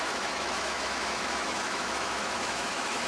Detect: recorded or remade remade